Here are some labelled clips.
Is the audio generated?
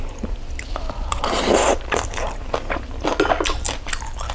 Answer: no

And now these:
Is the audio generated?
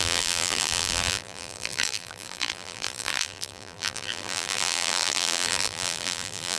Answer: yes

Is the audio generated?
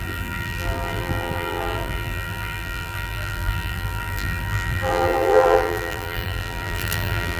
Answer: yes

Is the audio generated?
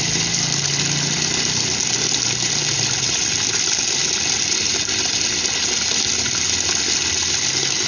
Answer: no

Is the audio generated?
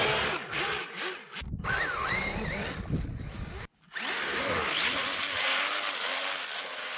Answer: no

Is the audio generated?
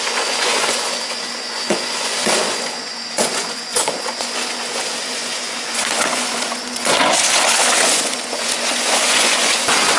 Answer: yes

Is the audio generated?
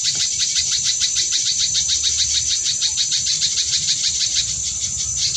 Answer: no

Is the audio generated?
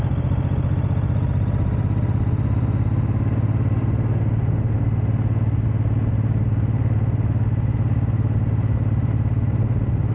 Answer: no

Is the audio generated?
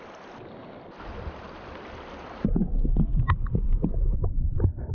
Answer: no